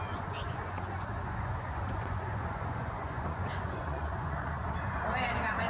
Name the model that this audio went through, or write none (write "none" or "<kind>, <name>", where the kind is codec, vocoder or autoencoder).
vocoder, Vocos